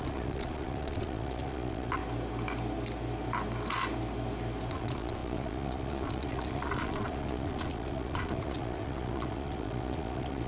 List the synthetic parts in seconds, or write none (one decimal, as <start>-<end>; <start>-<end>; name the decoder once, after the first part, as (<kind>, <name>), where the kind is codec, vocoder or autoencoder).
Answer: 0.0-2.0 (vocoder, Vocos); 4.7-10.5